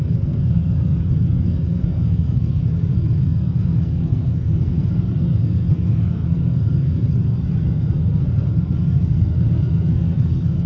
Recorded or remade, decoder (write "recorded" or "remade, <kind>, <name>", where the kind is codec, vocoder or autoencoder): remade, codec, SNAC